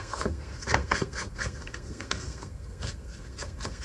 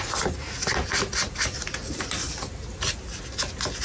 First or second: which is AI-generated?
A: first